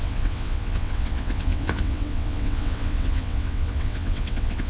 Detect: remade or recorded remade